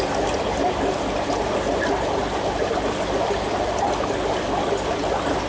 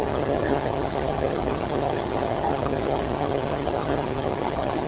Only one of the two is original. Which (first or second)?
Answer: first